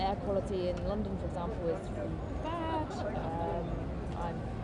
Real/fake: real